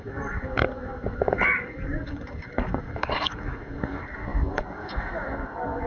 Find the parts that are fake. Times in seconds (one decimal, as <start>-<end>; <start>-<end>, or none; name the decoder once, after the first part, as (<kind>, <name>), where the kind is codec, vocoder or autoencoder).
0.0-5.9 (codec, DAC)